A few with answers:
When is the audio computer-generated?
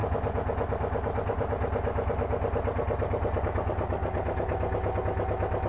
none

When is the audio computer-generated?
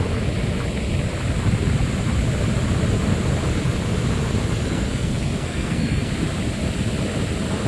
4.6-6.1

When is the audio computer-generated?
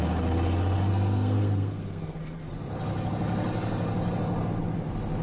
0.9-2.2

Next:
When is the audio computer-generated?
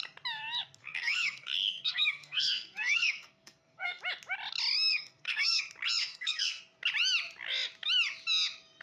0.8-4.0; 4.9-5.6; 6.0-6.6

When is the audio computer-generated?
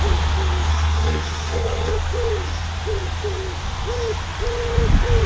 0.7-1.9